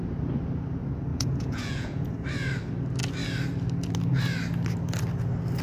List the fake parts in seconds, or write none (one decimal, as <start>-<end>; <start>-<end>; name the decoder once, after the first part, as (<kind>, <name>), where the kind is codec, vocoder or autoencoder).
1.1-2.1 (vocoder, Vocos)